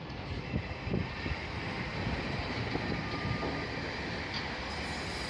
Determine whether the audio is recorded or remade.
recorded